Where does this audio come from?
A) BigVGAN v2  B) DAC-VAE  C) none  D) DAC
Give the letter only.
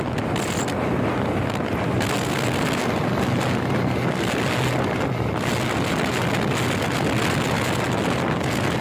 C